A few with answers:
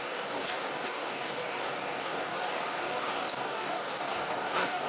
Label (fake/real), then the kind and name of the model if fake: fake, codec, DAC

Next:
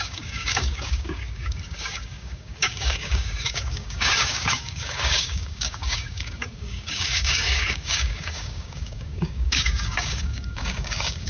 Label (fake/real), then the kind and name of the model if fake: fake, codec, DAC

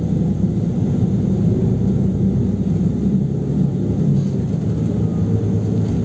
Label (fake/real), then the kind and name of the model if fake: real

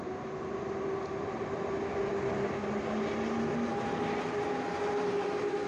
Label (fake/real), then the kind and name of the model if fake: real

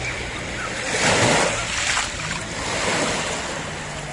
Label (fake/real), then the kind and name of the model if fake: real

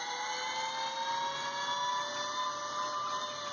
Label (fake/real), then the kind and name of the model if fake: real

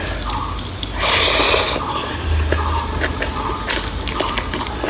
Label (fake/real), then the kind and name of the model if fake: real